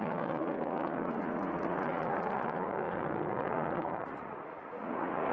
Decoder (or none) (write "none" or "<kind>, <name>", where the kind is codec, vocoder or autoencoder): vocoder, Vocos